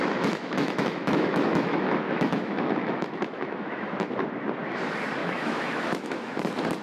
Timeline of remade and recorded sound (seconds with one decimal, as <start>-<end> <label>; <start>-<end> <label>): 0.0-4.1 remade; 4.1-5.2 recorded; 5.2-6.3 remade; 6.3-6.8 recorded